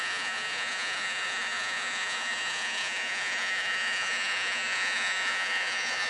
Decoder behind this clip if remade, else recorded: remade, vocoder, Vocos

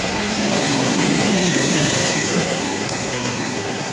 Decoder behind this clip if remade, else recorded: remade, codec, SNAC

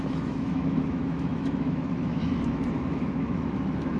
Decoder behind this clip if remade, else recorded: remade, autoencoder, DAC-VAE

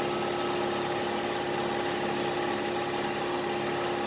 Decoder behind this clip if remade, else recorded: recorded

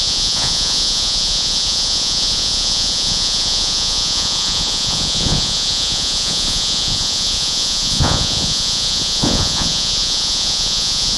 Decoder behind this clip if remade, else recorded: remade, vocoder, Vocos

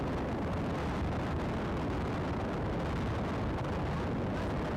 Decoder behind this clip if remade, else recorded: recorded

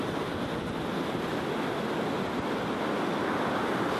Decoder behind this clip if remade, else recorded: recorded